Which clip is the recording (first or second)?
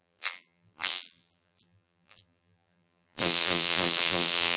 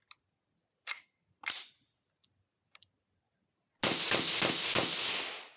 second